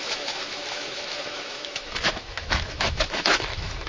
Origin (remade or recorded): remade